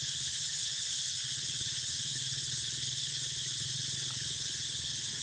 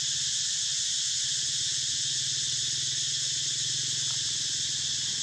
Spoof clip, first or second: first